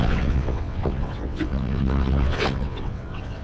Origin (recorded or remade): remade